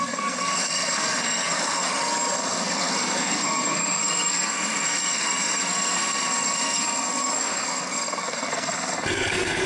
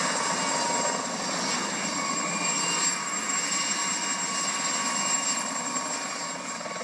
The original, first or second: second